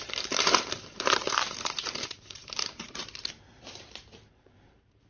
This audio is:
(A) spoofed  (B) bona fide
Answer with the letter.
A